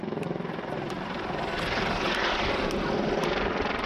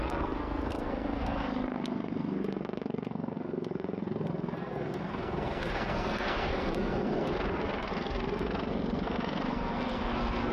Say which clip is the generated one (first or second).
second